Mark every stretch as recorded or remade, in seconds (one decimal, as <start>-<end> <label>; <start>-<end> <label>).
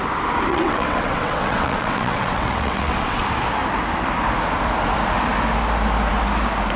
0.0-0.5 recorded; 0.5-3.2 remade; 3.2-6.8 recorded